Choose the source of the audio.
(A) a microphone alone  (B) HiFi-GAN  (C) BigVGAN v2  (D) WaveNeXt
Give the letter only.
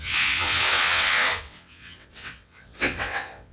D